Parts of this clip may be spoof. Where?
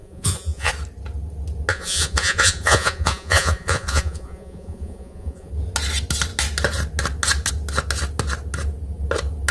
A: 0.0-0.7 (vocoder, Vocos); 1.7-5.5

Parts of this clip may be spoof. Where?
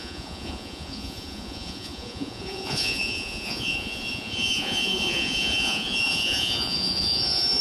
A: 0.0-7.6 (vocoder, Vocos)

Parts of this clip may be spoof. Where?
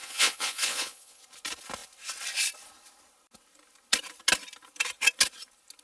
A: 0.0-1.2 (vocoder, Vocos)